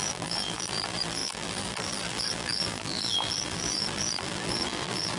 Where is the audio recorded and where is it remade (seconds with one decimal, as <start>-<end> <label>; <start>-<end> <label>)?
0.0-5.2 remade